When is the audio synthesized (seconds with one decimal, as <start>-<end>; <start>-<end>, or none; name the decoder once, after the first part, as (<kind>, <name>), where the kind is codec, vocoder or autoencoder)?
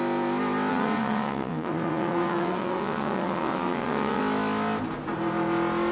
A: 0.7-4.2 (vocoder, WaveNeXt)